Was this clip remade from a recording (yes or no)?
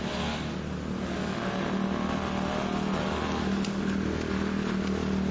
no